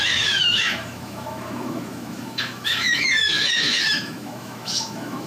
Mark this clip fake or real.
fake